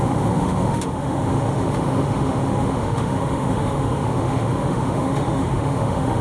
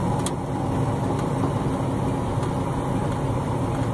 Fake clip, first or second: first